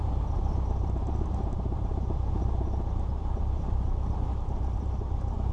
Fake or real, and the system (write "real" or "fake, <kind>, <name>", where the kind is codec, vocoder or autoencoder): fake, vocoder, BigVGAN v2